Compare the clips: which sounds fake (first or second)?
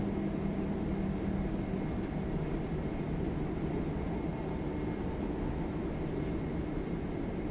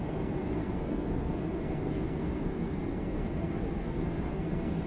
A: second